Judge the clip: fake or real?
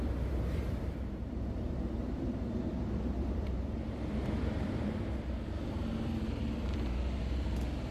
fake